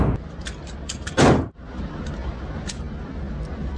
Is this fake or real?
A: real